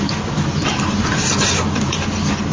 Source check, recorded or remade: recorded